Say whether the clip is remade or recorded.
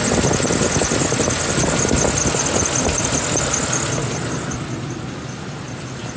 recorded